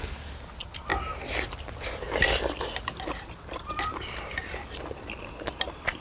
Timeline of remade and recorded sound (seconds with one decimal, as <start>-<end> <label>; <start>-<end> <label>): 0.0-6.0 recorded